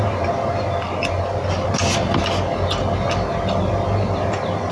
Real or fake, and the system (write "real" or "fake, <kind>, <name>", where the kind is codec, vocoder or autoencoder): real